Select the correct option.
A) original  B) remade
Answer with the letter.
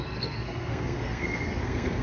B